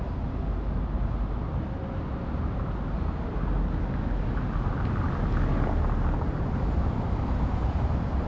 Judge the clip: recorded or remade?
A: recorded